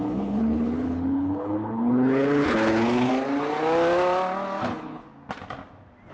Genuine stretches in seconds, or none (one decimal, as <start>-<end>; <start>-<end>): 3.1-4.6; 5.0-6.1